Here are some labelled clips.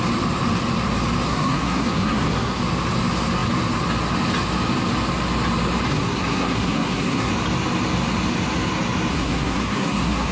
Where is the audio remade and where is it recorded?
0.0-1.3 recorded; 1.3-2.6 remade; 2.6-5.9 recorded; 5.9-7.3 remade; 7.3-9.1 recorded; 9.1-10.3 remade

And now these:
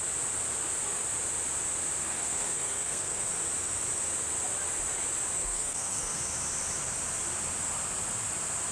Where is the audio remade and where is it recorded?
0.0-2.0 recorded; 2.0-3.3 remade; 3.3-5.4 recorded; 5.4-6.2 remade; 6.2-8.7 recorded

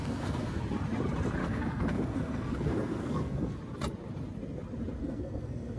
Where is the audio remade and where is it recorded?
0.0-0.6 remade; 0.6-1.4 recorded; 1.4-3.6 remade; 3.6-5.0 recorded; 5.0-5.8 remade

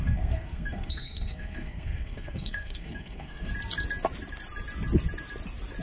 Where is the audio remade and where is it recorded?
0.0-3.5 remade; 3.5-5.8 recorded

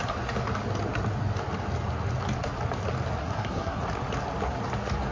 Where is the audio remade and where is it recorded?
0.0-3.2 recorded; 3.2-3.8 remade; 3.8-5.1 recorded

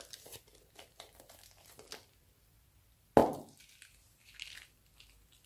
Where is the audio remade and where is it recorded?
0.0-5.5 recorded